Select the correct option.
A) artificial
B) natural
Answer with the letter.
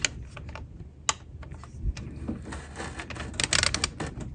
B